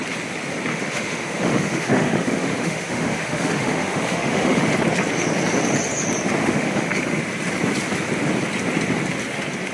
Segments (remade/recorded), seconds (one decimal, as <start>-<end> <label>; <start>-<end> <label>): 0.0-0.7 recorded; 0.7-4.7 remade; 4.7-6.4 recorded; 6.4-7.2 remade; 7.2-9.7 recorded